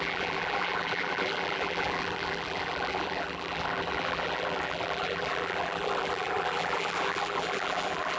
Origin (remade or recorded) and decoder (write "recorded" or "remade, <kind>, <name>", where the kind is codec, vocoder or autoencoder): remade, vocoder, BigVGAN v2